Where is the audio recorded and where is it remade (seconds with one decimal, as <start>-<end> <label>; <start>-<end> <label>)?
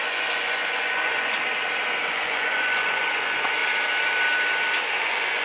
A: 0.0-1.4 remade; 1.4-2.1 recorded; 2.1-3.6 remade; 3.6-5.0 recorded; 5.0-5.4 remade